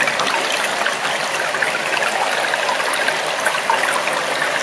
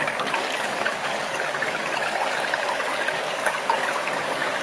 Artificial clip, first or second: second